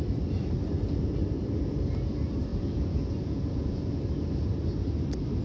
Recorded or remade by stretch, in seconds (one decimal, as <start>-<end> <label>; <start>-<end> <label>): 0.0-2.5 recorded; 2.5-4.0 remade; 4.0-5.4 recorded